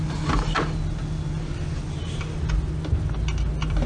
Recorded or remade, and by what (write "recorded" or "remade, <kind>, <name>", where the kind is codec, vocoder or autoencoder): recorded